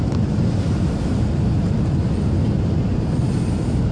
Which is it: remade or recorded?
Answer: recorded